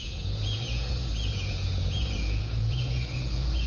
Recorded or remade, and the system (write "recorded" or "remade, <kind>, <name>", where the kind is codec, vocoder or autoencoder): remade, vocoder, Vocos